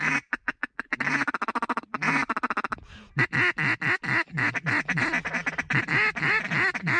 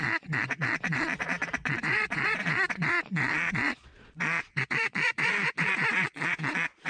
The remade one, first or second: second